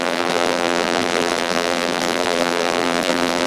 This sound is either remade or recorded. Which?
remade